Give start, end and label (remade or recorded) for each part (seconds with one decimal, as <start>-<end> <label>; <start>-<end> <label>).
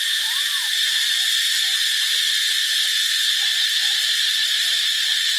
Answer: 0.0-2.9 recorded; 2.9-4.7 remade; 4.7-5.4 recorded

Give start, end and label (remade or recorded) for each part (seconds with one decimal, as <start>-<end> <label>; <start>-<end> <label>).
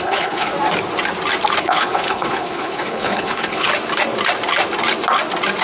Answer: 0.0-0.5 remade; 0.5-1.6 recorded; 1.6-3.7 remade; 3.7-5.6 recorded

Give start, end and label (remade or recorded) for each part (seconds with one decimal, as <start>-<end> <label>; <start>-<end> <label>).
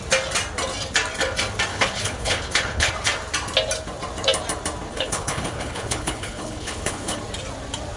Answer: 0.0-1.7 recorded; 1.7-2.9 remade; 2.9-4.9 recorded; 4.9-7.2 remade; 7.2-8.0 recorded